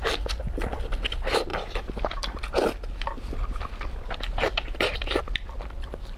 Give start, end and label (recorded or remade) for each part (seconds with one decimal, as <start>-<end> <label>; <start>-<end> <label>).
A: 0.0-1.5 recorded; 1.5-5.2 remade; 5.2-6.2 recorded